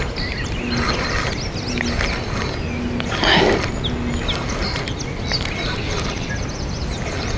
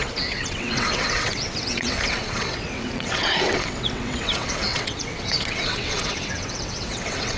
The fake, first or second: second